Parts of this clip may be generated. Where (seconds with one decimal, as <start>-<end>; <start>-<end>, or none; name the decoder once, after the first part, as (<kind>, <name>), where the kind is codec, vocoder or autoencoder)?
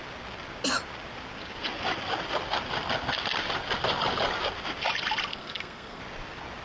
5.3-6.0 (codec, SNAC)